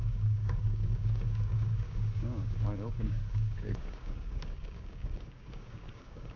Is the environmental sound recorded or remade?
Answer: remade